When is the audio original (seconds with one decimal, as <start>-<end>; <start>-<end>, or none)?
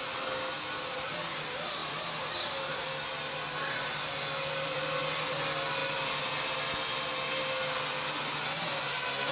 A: 0.0-9.3